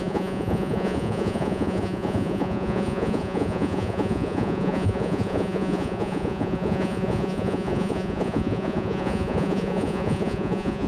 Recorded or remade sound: remade